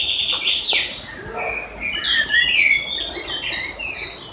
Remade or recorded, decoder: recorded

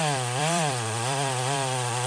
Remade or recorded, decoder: remade, vocoder, BigVGAN v2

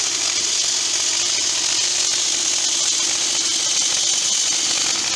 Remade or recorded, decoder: recorded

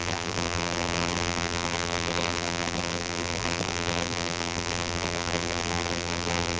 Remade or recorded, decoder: remade, vocoder, BigVGAN v2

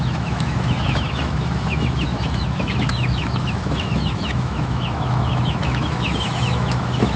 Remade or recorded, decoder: remade, autoencoder, DAC-VAE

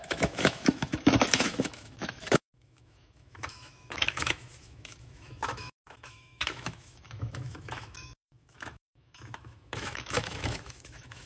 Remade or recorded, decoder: remade, autoencoder, DAC-VAE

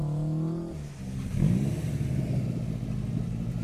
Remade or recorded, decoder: recorded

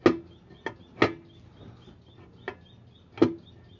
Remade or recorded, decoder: recorded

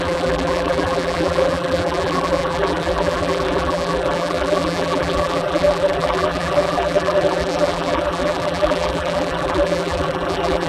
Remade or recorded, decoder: remade, vocoder, BigVGAN v2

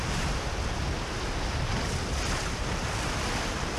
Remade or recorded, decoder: recorded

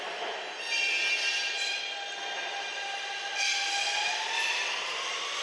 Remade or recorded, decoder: recorded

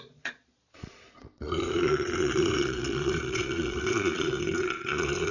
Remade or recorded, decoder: remade, vocoder, Vocos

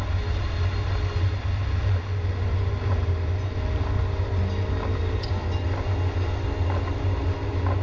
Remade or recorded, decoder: recorded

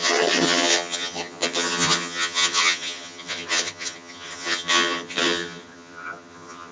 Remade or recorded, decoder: remade, vocoder, HiFi-GAN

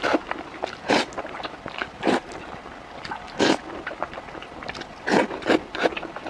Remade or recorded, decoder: recorded